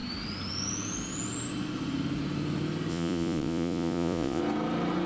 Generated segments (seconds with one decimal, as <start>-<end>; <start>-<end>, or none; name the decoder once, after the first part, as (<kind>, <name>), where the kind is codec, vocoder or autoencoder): 2.9-4.4 (vocoder, Vocos)